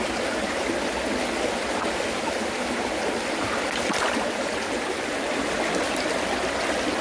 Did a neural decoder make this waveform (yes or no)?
no